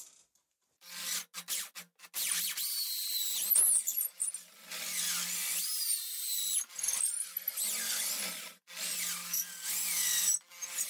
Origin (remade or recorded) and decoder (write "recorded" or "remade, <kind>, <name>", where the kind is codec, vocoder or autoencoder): recorded